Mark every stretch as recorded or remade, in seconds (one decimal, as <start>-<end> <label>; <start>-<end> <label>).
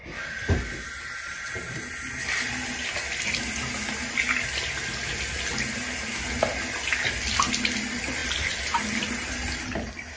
0.0-10.2 recorded